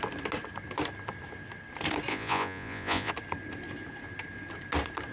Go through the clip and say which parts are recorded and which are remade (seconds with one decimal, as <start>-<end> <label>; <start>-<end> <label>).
0.0-2.1 recorded; 2.1-3.1 remade; 3.1-5.1 recorded